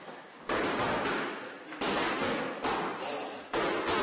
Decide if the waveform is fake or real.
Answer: real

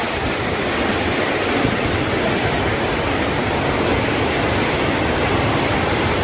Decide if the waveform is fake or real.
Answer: real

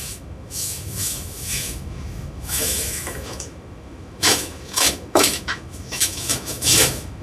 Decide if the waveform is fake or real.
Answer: fake